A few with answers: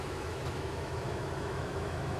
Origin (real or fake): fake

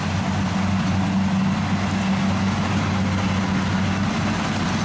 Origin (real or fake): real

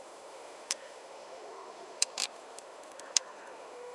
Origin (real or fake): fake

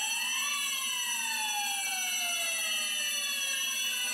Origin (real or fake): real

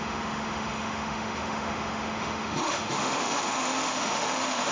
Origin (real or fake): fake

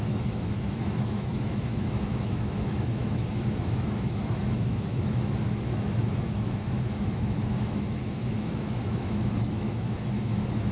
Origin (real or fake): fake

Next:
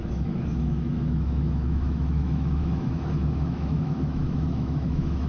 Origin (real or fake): fake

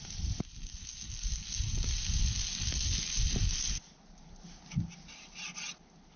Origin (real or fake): real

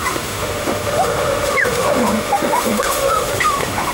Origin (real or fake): fake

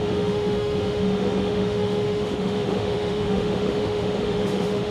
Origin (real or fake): fake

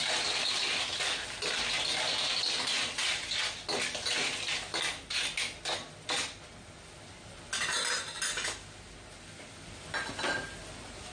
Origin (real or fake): real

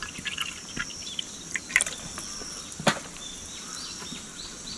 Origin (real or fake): real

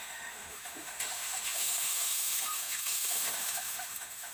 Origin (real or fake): fake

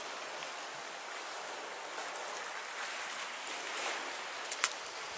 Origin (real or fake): real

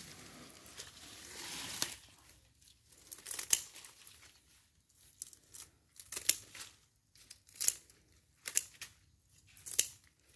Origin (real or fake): real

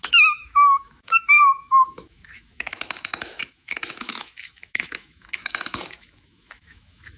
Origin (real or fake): fake